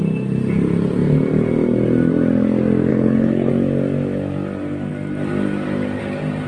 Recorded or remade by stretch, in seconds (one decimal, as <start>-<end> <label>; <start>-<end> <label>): 0.0-2.9 recorded; 2.9-3.5 remade; 3.5-6.5 recorded